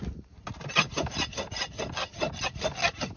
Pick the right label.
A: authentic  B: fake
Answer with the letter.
A